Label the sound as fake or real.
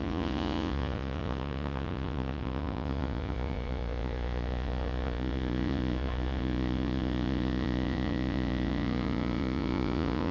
fake